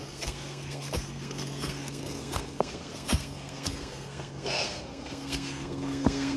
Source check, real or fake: fake